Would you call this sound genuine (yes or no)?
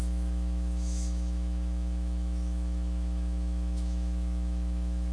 no